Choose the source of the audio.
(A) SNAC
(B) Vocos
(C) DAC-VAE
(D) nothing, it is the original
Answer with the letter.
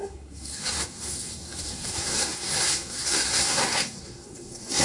A